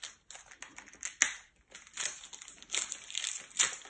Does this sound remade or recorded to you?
recorded